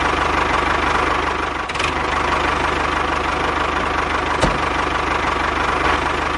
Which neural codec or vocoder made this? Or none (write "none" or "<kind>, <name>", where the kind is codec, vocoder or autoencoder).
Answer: none